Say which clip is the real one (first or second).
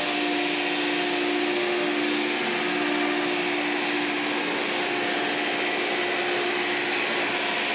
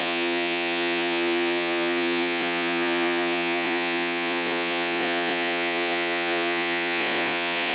first